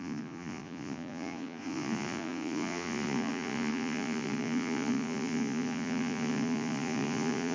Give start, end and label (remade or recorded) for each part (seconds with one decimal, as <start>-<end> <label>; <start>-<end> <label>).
0.0-7.5 remade